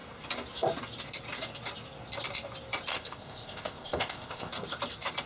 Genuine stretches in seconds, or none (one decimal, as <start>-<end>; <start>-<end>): 0.0-2.9; 4.5-5.3